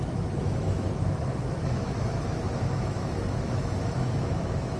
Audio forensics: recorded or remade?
remade